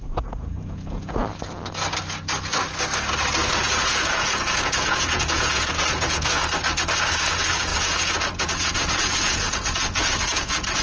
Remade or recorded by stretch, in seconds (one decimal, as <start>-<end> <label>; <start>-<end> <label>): 0.0-1.2 remade; 1.2-3.5 recorded; 3.5-6.4 remade; 6.4-7.0 recorded; 7.0-10.8 remade